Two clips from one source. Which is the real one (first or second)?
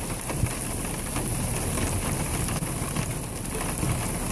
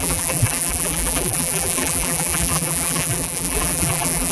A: first